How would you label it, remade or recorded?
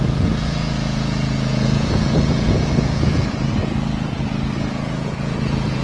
remade